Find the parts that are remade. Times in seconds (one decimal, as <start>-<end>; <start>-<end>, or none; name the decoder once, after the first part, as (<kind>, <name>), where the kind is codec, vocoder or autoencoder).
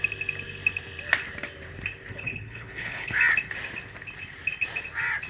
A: 2.1-3.2 (codec, HILCodec)